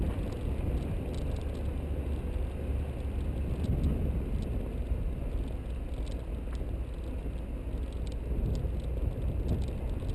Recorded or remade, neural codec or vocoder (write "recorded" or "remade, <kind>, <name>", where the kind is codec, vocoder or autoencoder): recorded